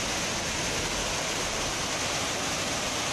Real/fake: real